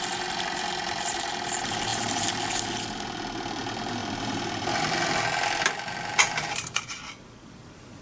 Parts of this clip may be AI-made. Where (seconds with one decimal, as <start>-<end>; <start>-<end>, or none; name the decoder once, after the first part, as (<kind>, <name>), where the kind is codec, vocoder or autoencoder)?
1.9-2.8 (vocoder, BigVGAN v2); 4.0-7.0